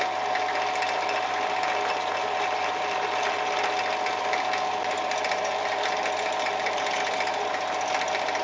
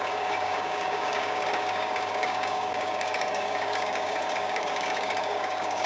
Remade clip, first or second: second